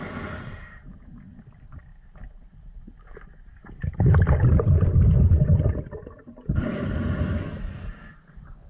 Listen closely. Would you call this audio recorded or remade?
recorded